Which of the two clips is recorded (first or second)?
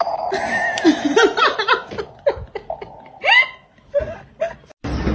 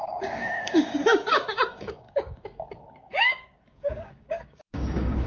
first